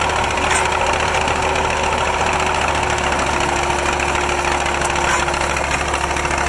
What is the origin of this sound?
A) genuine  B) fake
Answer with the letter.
A